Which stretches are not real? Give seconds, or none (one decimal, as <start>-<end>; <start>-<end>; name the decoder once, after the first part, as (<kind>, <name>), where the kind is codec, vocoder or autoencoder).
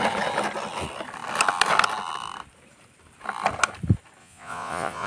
4.2-5.1 (vocoder, Vocos)